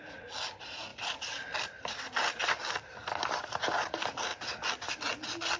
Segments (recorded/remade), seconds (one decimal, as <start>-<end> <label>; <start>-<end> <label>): 0.0-5.6 recorded